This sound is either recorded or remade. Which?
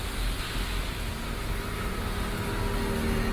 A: recorded